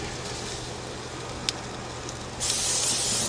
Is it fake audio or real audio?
real